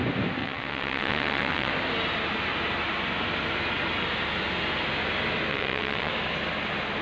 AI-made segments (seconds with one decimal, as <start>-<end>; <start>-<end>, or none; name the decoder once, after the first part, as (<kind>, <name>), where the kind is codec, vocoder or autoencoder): 0.4-1.7 (vocoder, WaveNeXt); 5.5-6.1